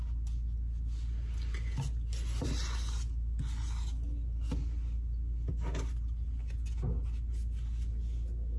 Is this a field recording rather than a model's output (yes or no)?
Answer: yes